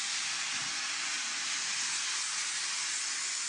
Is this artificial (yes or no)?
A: no